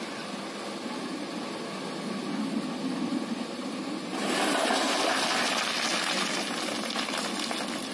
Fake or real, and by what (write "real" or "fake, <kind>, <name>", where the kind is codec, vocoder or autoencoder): real